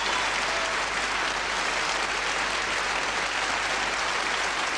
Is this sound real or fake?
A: real